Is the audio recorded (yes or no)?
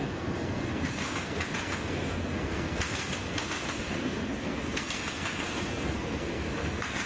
no